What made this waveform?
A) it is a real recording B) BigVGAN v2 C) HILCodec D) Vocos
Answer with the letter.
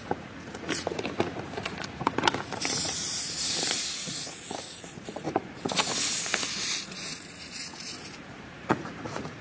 D